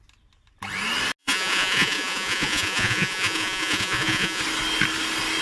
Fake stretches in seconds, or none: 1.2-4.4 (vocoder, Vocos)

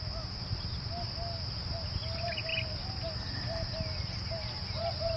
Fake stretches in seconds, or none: none